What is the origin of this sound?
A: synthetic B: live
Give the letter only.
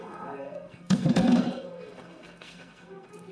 A